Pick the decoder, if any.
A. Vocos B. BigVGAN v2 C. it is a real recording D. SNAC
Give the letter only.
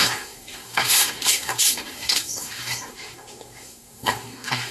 D